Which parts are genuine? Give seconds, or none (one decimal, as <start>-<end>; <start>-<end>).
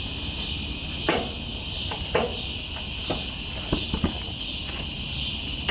0.0-5.7